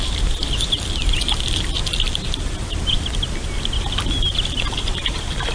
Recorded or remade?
recorded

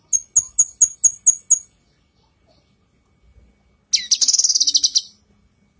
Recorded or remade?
recorded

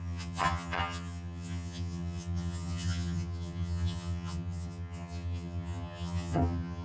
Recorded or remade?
remade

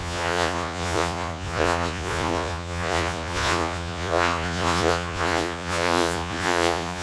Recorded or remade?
remade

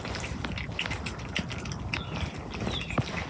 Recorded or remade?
recorded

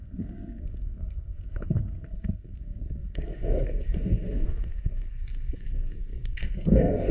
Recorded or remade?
remade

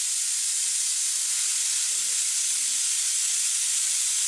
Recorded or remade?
recorded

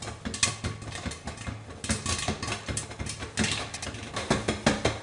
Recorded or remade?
recorded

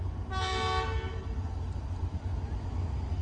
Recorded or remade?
recorded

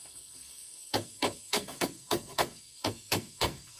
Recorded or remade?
remade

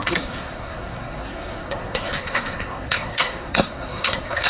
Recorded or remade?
remade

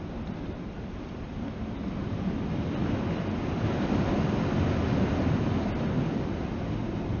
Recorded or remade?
recorded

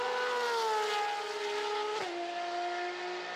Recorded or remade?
recorded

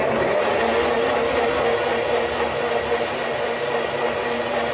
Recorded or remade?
recorded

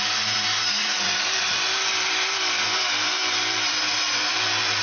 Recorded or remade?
remade